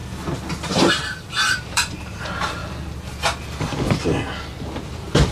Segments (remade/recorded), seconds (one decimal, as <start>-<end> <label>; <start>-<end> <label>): 0.0-0.7 recorded; 0.7-2.6 remade; 2.6-4.8 recorded; 4.8-5.3 remade